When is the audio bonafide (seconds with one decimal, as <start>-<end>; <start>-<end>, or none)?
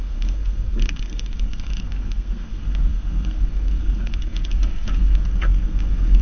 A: none